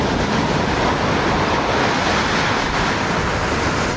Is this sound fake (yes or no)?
no